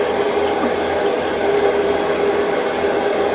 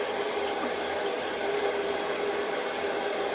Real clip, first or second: first